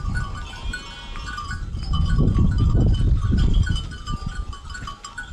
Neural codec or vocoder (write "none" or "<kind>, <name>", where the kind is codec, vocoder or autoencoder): none